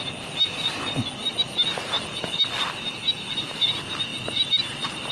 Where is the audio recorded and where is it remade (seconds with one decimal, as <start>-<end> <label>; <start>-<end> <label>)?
0.0-5.1 recorded